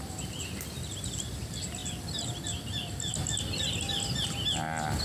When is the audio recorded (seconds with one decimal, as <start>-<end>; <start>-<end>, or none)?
0.0-5.0